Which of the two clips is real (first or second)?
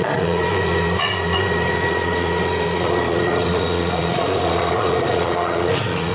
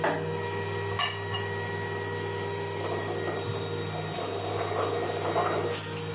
second